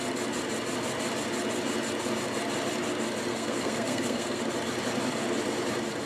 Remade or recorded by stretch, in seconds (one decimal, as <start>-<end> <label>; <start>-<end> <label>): 0.0-3.3 recorded; 3.3-4.4 remade; 4.4-6.1 recorded